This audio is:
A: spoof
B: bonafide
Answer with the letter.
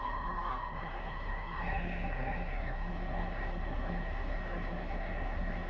A